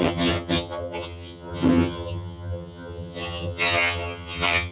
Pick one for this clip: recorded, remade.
remade